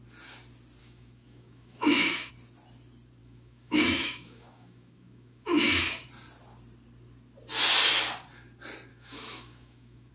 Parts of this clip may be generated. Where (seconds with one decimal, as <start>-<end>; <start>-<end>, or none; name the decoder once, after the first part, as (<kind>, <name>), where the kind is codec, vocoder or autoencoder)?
0.8-2.3 (autoencoder, DAC-VAE); 3.2-6.1; 8.9-10.1